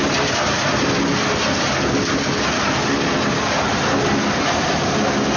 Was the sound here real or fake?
real